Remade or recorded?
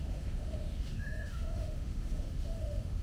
remade